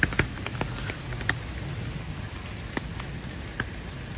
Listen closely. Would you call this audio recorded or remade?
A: recorded